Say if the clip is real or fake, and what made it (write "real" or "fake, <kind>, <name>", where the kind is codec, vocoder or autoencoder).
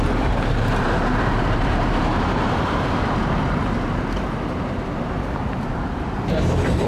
fake, vocoder, BigVGAN v2